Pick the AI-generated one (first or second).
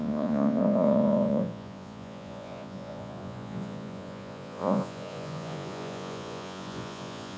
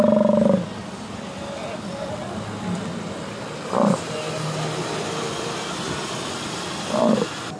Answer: first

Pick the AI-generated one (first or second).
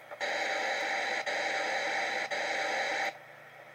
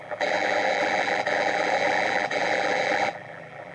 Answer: second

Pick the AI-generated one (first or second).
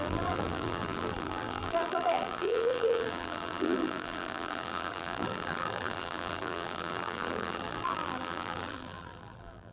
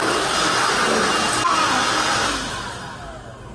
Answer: first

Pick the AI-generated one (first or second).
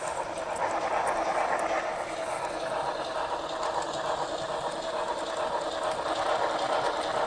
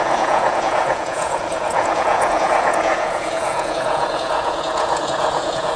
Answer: second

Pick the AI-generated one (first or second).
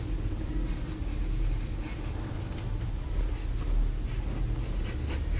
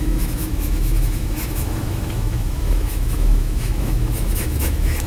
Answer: second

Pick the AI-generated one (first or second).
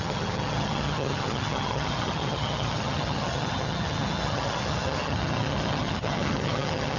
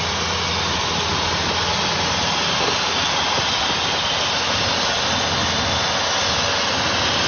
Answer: first